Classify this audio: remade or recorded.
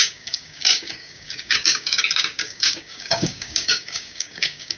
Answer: remade